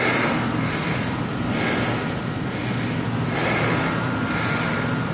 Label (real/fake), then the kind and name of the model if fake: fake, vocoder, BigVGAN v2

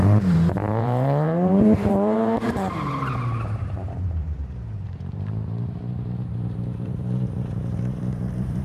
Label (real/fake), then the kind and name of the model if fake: fake, vocoder, BigVGAN v2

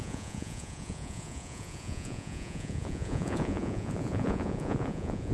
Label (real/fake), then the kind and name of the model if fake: fake, vocoder, Vocos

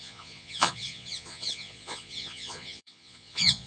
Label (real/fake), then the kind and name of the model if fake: fake, vocoder, Vocos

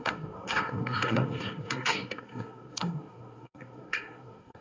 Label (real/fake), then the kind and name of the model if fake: fake, codec, SNAC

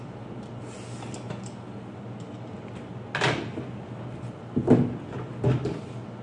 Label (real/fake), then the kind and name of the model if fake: real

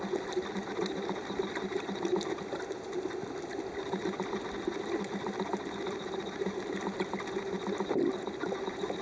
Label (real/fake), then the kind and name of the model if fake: real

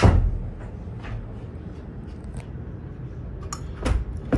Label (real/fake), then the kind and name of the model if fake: real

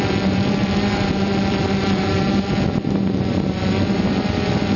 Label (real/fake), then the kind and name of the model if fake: real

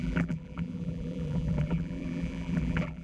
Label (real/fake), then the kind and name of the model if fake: fake, vocoder, BigVGAN v2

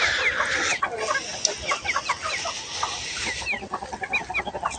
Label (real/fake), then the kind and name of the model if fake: real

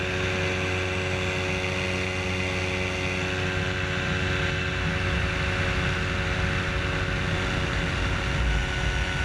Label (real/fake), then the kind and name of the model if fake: real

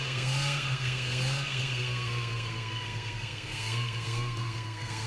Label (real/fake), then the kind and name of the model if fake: fake, codec, SNAC